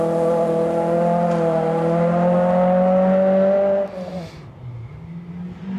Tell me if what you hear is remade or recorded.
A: recorded